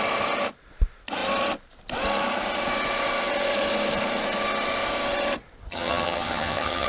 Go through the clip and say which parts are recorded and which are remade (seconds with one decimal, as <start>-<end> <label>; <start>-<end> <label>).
0.0-5.7 recorded; 5.7-6.9 remade